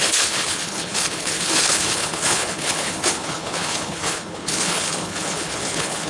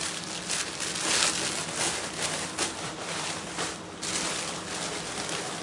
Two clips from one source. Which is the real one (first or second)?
second